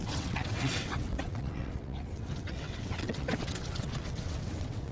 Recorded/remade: remade